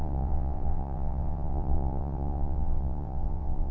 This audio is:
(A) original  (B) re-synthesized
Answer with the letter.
B